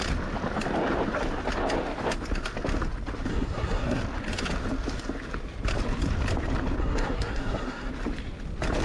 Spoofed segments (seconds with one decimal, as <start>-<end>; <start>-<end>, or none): 3.3-4.0; 6.8-7.9